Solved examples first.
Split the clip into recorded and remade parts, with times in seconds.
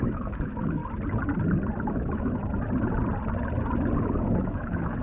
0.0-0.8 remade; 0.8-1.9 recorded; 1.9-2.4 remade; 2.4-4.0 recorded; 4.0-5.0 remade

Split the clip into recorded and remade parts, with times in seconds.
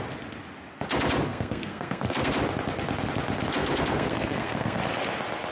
0.0-1.3 recorded; 1.3-2.3 remade; 2.3-3.6 recorded; 3.6-4.8 remade; 4.8-5.5 recorded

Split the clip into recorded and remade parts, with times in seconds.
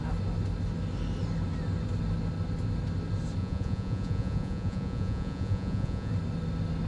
0.0-3.4 recorded; 3.4-6.1 remade; 6.1-6.9 recorded